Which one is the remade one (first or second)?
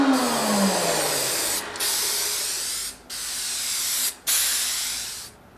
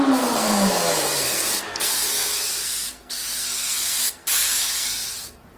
second